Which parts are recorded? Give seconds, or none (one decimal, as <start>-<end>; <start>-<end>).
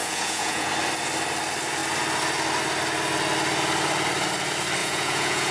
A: 0.7-4.8